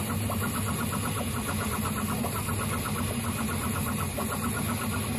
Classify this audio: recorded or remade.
recorded